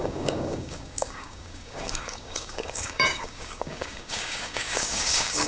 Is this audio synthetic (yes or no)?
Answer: yes